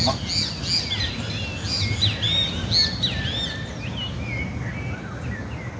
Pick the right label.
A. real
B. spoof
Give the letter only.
A